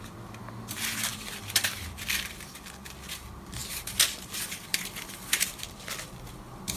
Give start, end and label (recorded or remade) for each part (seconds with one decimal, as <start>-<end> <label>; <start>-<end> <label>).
0.0-1.1 recorded; 1.1-2.5 remade; 2.5-3.6 recorded; 3.6-6.8 remade

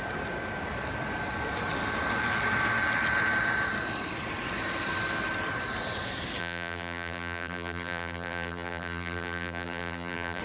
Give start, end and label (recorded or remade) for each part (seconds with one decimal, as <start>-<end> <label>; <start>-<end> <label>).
0.0-6.4 recorded; 6.4-10.4 remade

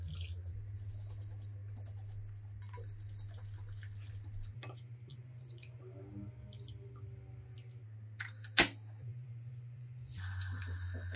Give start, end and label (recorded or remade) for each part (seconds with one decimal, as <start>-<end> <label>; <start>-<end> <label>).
0.0-5.1 recorded; 5.1-5.8 remade; 5.8-9.1 recorded; 9.1-10.6 remade; 10.6-11.2 recorded

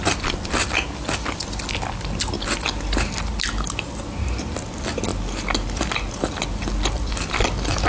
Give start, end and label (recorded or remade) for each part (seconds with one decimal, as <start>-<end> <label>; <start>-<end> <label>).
0.0-7.9 recorded

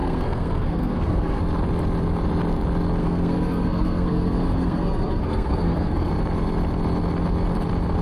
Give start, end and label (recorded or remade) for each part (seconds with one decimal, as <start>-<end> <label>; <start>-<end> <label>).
0.0-1.4 remade; 1.4-3.0 recorded; 3.0-6.1 remade; 6.1-8.0 recorded

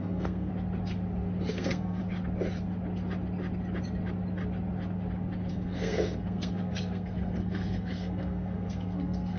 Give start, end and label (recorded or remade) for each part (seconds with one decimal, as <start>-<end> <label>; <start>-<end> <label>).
0.0-0.5 remade; 0.5-1.5 recorded; 1.5-2.0 remade; 2.0-5.5 recorded; 5.5-9.4 remade

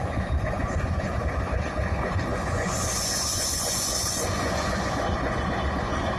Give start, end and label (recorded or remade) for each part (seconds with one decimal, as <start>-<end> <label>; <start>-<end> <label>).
0.0-1.1 remade; 1.1-1.6 recorded; 1.6-6.2 remade

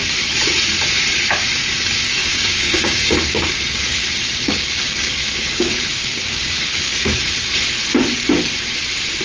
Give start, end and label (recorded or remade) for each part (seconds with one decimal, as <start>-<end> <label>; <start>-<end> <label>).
0.0-2.2 recorded; 2.2-4.0 remade; 4.0-4.4 recorded; 4.4-7.1 remade; 7.1-9.2 recorded